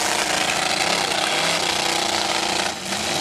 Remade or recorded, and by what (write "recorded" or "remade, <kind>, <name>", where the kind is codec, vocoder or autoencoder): recorded